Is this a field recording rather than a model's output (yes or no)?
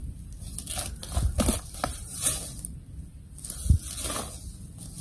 yes